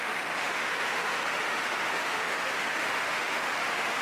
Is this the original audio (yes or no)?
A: no